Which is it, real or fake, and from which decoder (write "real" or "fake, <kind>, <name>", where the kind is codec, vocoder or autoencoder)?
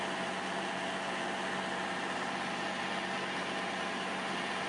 real